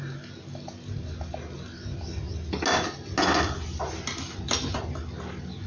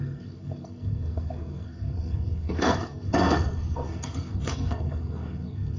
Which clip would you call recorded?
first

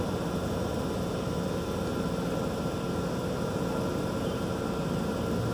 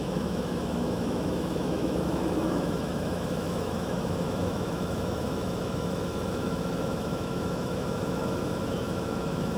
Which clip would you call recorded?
first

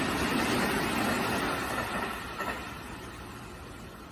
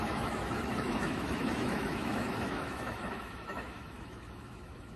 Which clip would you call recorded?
first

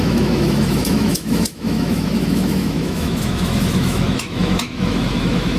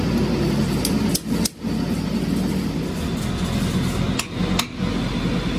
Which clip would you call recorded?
second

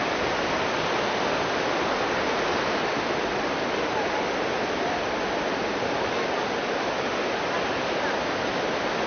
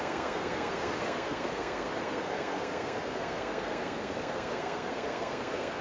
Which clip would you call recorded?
first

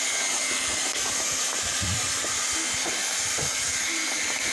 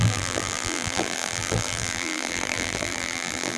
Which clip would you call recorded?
first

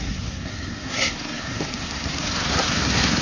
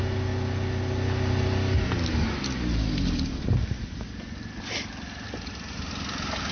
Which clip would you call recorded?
second